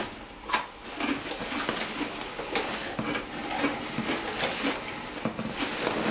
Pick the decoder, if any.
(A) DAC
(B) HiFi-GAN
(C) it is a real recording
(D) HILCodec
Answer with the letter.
C